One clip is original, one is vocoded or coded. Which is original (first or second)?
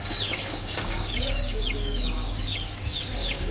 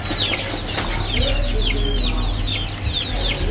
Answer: second